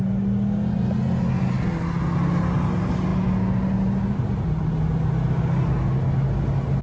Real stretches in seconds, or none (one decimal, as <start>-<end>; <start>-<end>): 0.0-6.8